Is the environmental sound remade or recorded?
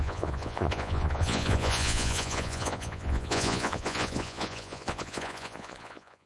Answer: remade